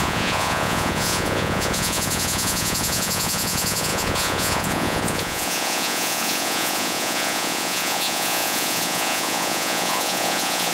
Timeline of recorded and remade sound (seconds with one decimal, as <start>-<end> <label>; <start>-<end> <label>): 0.0-10.7 remade

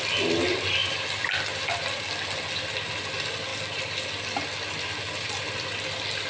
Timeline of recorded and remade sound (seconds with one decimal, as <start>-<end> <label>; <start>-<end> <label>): 0.0-6.3 recorded

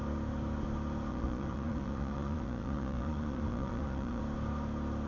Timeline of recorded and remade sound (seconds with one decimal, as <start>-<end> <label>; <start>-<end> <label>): 0.0-1.1 recorded; 1.1-4.2 remade; 4.2-5.1 recorded

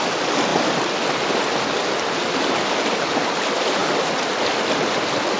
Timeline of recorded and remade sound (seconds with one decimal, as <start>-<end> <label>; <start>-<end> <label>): 0.0-5.4 recorded